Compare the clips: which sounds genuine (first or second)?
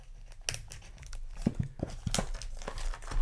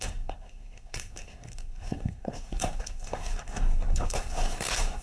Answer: first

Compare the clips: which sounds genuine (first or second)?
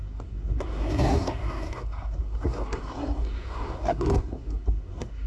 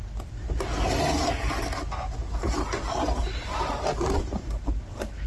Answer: second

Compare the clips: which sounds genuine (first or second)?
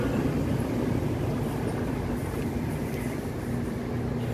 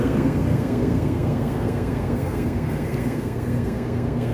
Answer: first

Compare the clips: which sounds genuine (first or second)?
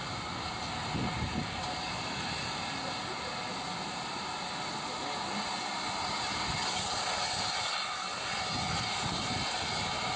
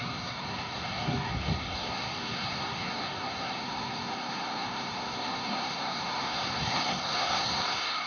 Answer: first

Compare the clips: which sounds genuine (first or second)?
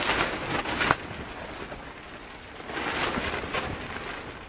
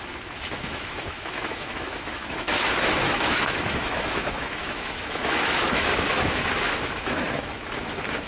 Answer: first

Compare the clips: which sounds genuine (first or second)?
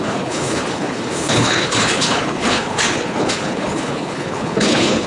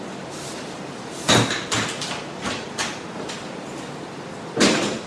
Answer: second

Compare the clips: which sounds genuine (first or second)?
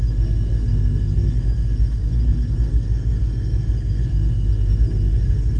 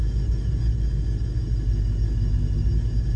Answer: second